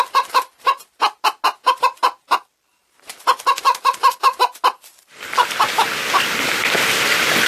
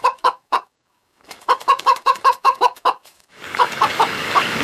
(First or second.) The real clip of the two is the first